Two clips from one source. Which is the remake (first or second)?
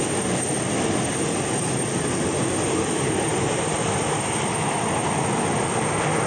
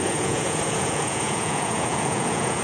second